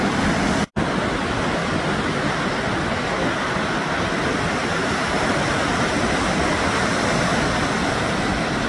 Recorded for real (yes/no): yes